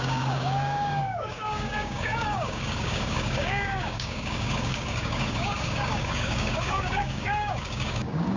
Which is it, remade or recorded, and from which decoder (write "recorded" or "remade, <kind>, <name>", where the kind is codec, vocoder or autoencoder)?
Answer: remade, codec, DAC